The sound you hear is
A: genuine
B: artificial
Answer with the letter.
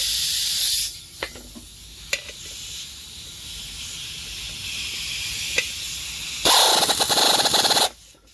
A